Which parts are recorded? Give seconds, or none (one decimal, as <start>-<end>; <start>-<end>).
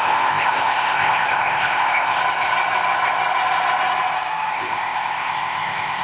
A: 2.2-4.5